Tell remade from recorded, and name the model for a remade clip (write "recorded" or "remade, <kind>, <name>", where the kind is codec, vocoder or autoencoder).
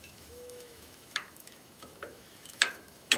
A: remade, autoencoder, DAC-VAE